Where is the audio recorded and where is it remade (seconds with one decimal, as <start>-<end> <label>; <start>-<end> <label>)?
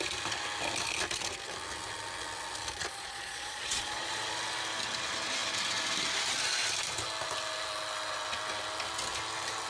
0.0-2.8 recorded; 2.8-4.2 remade; 4.2-9.7 recorded